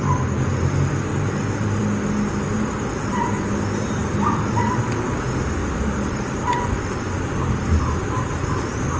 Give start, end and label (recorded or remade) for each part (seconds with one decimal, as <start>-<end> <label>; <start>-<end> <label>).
0.0-1.1 recorded; 1.1-1.8 remade; 1.8-4.0 recorded; 4.0-4.8 remade; 4.8-5.6 recorded; 5.6-8.0 remade; 8.0-9.0 recorded